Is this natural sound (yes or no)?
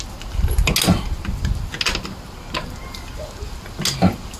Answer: yes